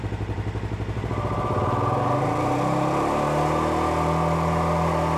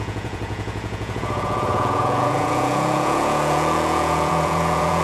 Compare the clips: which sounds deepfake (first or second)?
second